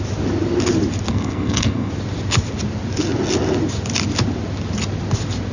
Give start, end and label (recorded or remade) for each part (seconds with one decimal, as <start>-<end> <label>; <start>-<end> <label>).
0.0-1.1 recorded; 1.1-1.9 remade; 1.9-5.5 recorded